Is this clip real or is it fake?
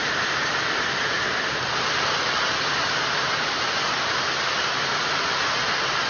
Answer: real